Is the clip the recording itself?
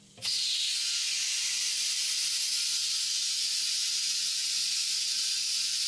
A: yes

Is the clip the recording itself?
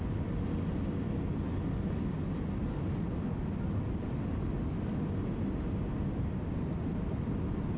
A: yes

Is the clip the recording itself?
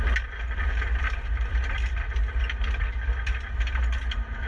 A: yes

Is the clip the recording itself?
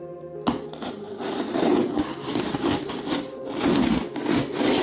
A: yes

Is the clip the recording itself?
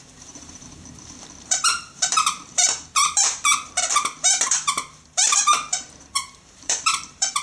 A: no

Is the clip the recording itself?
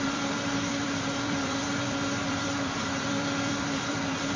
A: no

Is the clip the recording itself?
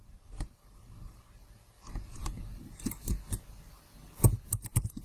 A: yes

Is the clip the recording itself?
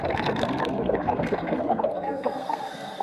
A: no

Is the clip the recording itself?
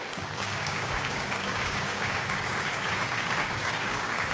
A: no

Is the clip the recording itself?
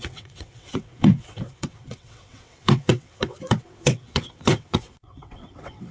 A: no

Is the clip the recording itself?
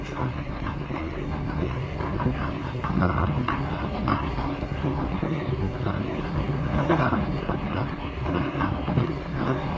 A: no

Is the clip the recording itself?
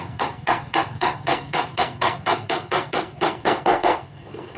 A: no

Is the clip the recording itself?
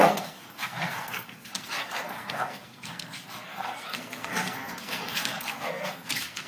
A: no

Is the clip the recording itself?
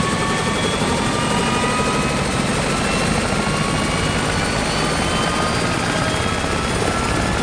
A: yes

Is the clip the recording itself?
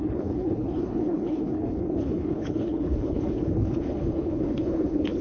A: no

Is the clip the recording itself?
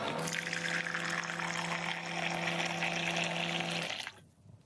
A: yes